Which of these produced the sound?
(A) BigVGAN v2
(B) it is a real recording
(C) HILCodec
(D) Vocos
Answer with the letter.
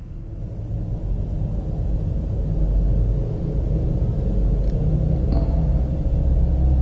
B